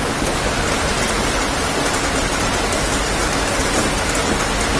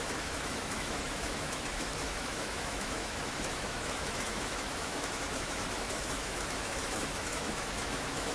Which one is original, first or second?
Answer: first